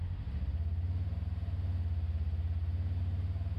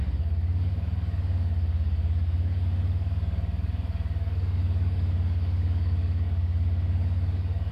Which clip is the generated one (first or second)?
second